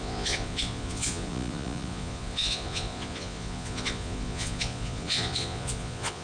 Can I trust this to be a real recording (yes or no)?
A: no